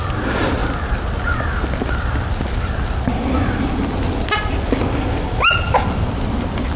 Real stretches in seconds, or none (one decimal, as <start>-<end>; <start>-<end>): 0.0-6.8